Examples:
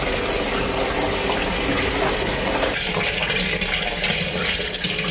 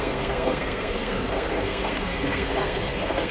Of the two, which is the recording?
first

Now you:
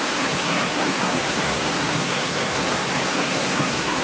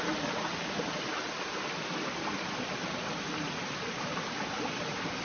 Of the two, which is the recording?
second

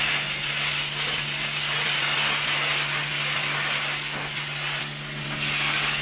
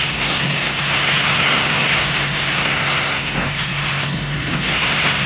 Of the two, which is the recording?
first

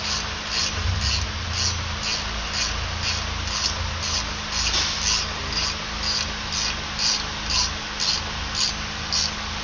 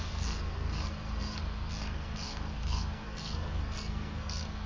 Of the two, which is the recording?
first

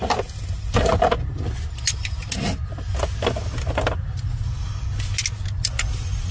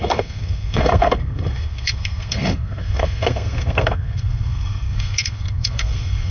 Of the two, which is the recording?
first